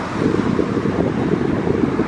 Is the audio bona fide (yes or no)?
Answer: yes